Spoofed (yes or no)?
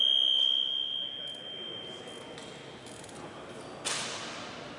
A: no